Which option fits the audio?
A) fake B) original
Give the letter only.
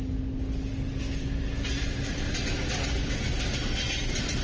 B